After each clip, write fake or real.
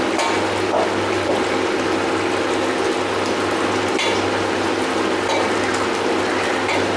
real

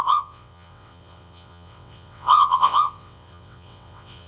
fake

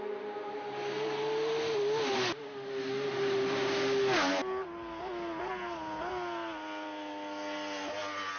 real